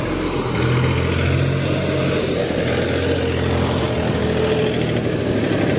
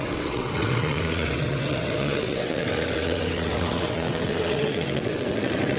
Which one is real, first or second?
first